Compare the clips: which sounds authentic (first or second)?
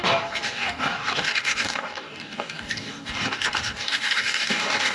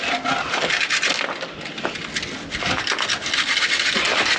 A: second